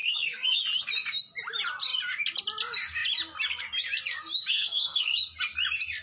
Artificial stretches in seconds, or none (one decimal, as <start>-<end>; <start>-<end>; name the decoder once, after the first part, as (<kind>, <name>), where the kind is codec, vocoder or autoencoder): 0.0-0.6 (codec, SNAC); 4.5-5.1